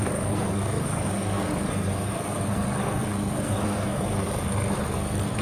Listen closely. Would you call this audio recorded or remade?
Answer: remade